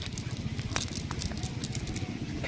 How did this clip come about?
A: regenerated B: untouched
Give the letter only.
B